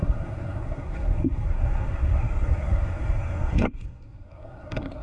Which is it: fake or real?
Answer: fake